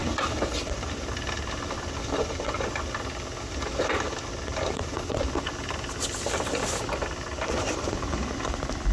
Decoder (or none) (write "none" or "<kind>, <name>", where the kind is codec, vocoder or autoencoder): vocoder, BigVGAN v2